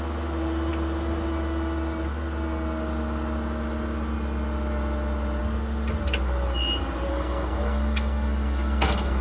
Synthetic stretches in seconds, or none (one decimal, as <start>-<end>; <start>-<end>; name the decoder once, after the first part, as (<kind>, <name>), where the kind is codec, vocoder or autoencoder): 7.1-9.2 (codec, SNAC)